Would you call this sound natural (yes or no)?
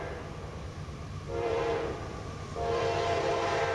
no